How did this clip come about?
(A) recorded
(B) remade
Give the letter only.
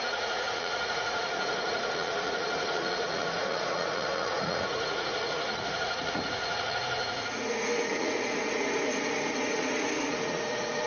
B